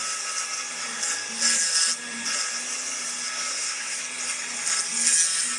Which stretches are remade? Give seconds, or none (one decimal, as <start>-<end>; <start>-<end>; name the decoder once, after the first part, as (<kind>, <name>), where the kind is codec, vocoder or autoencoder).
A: 3.5-4.0 (codec, SNAC)